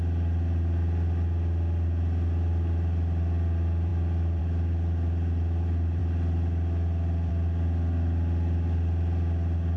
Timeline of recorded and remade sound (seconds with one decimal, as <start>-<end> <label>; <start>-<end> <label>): 0.0-9.8 recorded